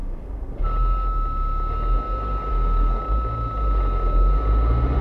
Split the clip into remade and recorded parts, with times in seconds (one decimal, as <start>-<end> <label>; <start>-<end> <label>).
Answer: 0.0-0.6 remade; 0.6-2.5 recorded; 2.5-3.0 remade; 3.0-5.0 recorded